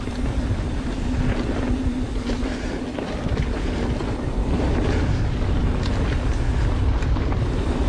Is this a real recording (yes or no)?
yes